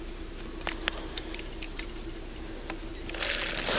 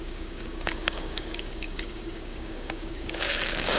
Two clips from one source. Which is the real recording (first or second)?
first